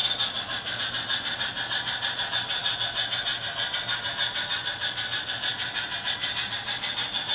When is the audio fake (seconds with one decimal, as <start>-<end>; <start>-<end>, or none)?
none